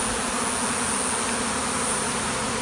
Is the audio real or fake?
real